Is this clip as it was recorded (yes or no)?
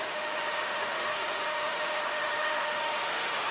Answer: no